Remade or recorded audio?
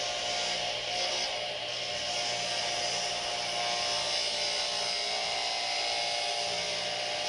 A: recorded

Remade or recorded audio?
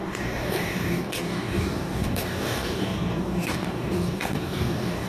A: remade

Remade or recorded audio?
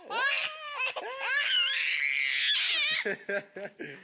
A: recorded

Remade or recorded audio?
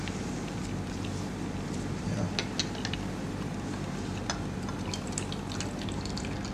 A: recorded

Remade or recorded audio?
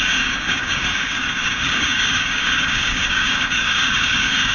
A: remade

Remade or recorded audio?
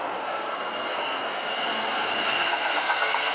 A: remade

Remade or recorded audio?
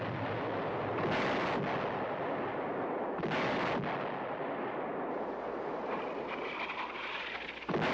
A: recorded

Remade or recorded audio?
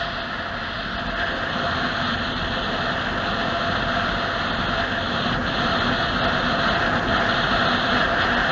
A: recorded